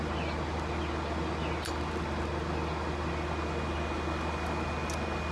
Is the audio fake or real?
real